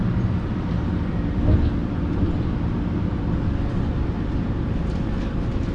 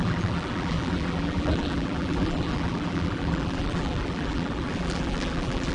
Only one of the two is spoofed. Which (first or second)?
second